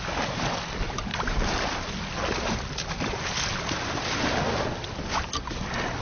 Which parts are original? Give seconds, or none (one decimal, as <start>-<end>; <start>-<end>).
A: 0.0-6.0